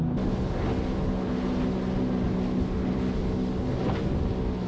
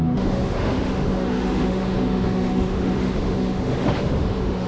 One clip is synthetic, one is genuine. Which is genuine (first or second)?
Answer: first